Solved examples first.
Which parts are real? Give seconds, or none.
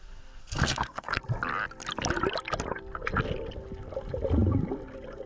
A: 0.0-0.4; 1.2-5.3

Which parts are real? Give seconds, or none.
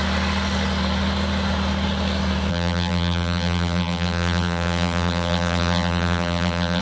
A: 0.0-2.5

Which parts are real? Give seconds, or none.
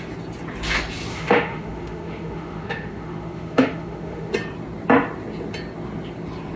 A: 0.0-1.1; 4.3-6.6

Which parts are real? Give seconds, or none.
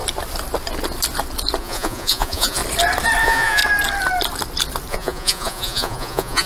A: 0.0-1.6; 2.6-3.2; 3.6-4.9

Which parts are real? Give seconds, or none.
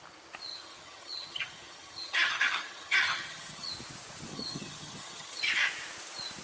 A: 0.0-0.5; 3.7-4.3; 5.4-6.4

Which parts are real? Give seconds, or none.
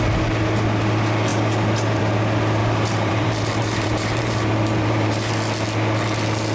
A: 0.0-2.6; 5.3-6.5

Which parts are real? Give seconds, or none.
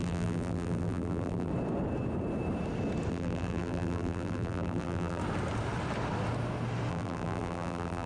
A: 1.5-3.1; 5.2-6.9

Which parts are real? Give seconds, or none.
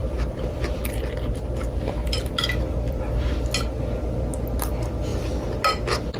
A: 1.1-2.0; 3.3-6.2